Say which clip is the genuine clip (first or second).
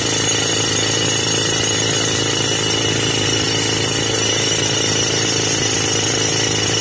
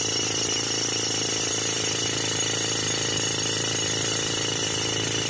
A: first